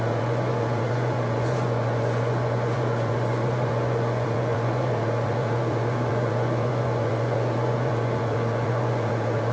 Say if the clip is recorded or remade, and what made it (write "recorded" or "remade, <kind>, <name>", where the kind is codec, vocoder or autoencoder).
remade, vocoder, Vocos